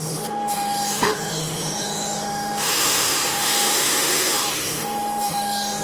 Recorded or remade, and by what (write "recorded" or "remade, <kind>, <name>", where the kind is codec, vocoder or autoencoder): remade, autoencoder, DAC-VAE